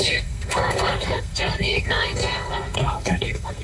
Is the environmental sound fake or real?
fake